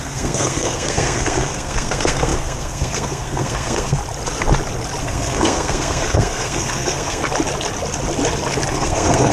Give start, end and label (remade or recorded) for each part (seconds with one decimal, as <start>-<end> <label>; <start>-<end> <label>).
0.0-4.0 remade; 4.0-5.0 recorded; 5.0-7.2 remade; 7.2-8.7 recorded; 8.7-9.3 remade